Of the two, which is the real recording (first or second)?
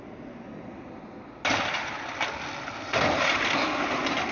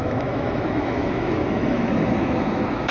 first